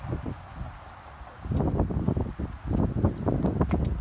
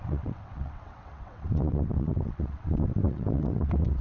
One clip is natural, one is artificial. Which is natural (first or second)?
first